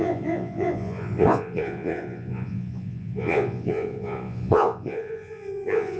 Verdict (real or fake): fake